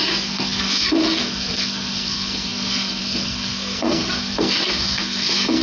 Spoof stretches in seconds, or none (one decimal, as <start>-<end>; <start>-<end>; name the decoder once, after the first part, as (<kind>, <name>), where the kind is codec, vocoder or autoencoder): 0.0-5.6 (codec, SNAC)